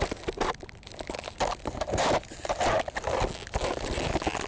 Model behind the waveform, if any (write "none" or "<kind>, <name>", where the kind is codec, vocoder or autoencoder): none